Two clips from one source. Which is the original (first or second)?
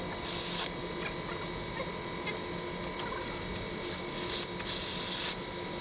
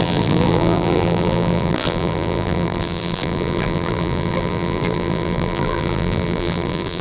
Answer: first